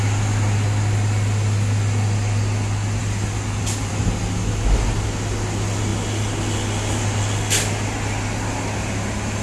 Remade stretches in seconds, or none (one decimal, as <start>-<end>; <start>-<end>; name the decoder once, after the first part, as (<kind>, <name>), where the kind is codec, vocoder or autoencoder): none